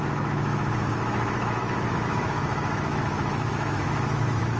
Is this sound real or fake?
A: fake